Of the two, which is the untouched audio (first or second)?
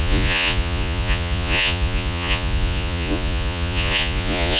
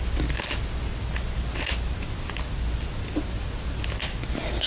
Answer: second